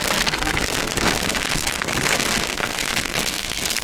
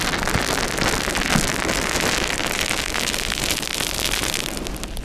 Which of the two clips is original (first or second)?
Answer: second